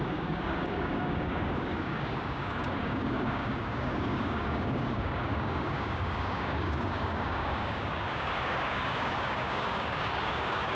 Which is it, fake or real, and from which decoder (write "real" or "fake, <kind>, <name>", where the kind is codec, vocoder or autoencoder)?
fake, codec, DAC